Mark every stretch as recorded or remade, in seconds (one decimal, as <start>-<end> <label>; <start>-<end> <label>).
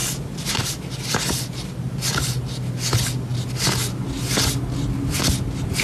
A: 0.0-5.8 recorded